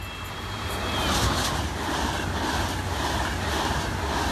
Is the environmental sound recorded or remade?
recorded